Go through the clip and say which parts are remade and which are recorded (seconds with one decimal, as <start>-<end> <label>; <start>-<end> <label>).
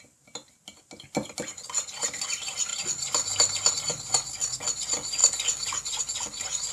0.0-6.7 recorded